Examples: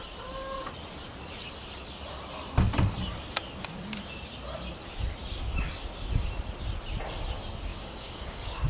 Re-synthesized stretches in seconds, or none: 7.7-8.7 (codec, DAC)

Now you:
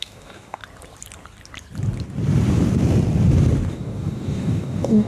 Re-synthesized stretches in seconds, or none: 0.0-0.6 (codec, DAC); 3.7-5.1

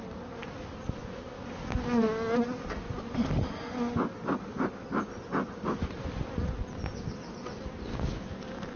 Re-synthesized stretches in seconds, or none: 7.9-8.4 (codec, DAC)